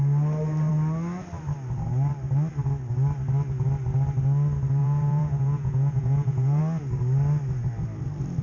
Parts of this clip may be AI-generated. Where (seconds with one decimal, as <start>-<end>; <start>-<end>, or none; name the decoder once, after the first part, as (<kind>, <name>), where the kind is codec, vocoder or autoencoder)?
4.8-6.6 (vocoder, Vocos)